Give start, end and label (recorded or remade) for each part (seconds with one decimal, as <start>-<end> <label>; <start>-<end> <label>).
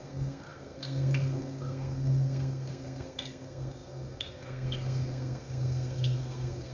0.0-6.7 remade